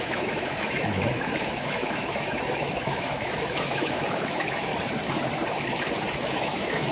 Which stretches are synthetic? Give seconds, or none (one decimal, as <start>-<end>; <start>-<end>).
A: 0.0-4.7; 6.2-6.9